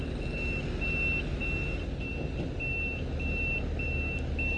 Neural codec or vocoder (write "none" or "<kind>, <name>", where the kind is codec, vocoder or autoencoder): none